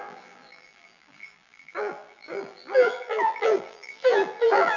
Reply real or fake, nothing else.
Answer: fake